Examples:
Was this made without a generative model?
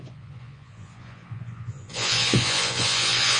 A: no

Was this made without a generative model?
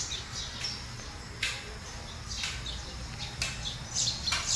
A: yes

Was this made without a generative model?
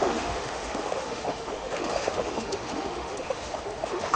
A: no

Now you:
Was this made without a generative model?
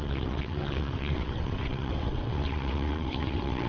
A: no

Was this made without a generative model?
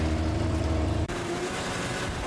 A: no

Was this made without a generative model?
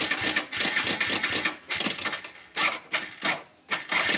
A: yes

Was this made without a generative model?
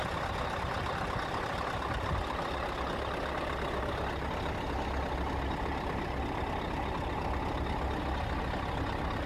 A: yes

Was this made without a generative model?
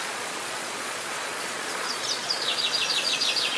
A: no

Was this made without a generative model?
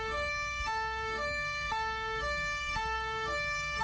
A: no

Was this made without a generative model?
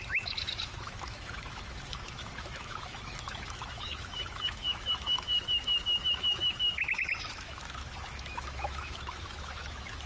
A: no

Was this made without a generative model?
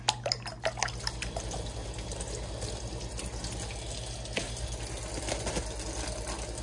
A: yes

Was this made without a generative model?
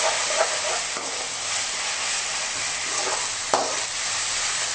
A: yes